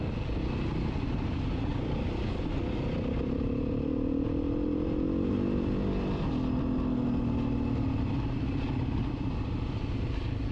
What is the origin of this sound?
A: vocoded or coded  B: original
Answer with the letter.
B